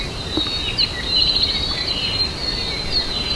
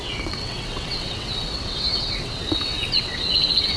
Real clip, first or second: first